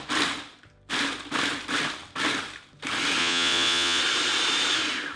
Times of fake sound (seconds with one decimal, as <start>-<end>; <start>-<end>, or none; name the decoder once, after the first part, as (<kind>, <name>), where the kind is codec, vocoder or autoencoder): 3.2-4.0 (vocoder, Vocos)